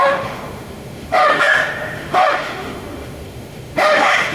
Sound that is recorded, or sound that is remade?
remade